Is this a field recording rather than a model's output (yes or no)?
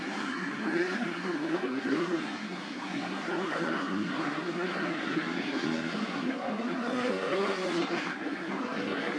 no